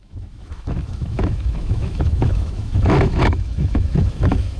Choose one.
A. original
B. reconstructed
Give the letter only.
B